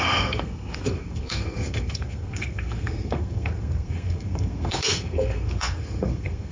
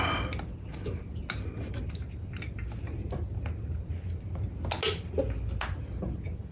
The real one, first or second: second